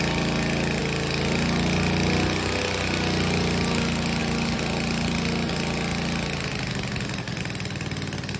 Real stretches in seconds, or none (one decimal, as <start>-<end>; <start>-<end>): 0.0-8.4